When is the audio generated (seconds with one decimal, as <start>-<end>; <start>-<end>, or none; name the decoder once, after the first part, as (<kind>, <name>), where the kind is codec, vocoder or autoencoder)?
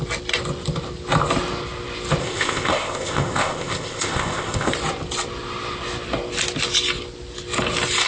2.2-4.7 (codec, ZipCodec)